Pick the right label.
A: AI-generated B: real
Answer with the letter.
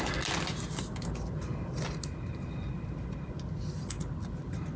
B